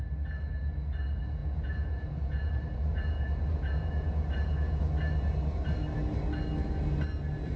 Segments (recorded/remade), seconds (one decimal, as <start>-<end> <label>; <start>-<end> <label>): 0.0-1.4 recorded; 1.4-2.5 remade; 2.5-2.9 recorded; 2.9-4.8 remade; 4.8-7.6 recorded

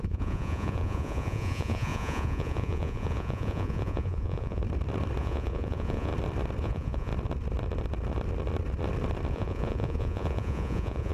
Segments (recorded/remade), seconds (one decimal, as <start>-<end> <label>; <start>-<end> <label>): 0.0-4.6 remade; 4.6-5.2 recorded; 5.2-6.1 remade; 6.1-6.6 recorded; 6.6-7.1 remade; 7.1-9.3 recorded; 9.3-11.1 remade

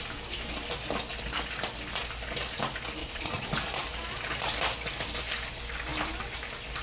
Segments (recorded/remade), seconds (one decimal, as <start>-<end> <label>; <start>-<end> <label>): 0.0-3.0 recorded; 3.0-3.5 remade; 3.5-6.8 recorded

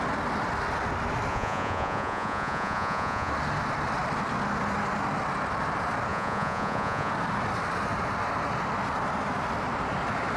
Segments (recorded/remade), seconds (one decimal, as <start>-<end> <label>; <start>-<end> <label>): 0.0-1.3 recorded; 1.3-3.3 remade; 3.3-6.1 recorded; 6.1-7.1 remade; 7.1-10.4 recorded

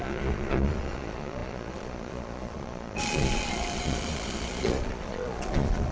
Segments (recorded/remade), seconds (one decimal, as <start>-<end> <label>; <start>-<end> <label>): 0.0-5.9 remade

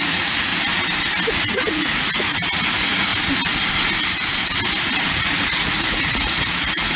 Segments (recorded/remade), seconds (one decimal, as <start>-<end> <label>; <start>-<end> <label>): 0.0-0.5 remade; 0.5-1.3 recorded; 1.3-3.1 remade; 3.1-5.1 recorded; 5.1-7.0 remade